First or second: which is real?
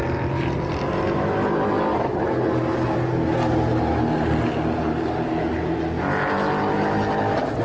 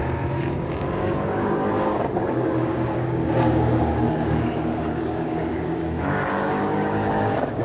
first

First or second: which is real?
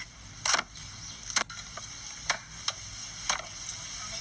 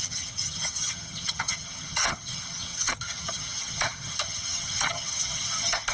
first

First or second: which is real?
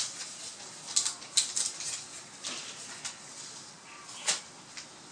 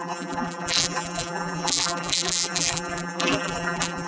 first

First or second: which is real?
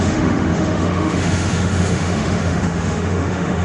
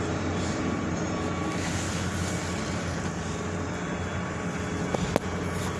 second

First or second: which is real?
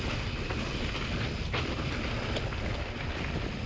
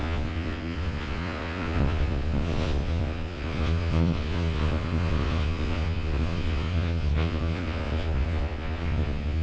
first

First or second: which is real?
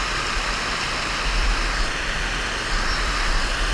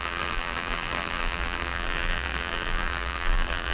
first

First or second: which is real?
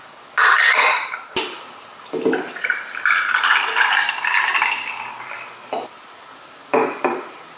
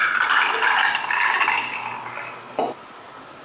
second